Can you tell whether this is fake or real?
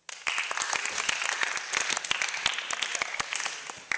real